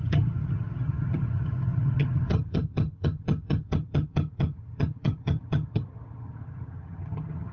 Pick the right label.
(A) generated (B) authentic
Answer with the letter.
A